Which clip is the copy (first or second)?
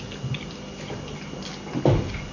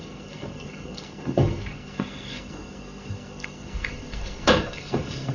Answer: second